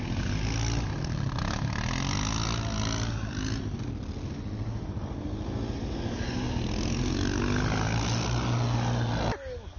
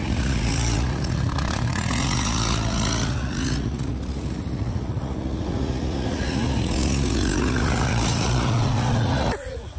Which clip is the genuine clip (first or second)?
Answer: first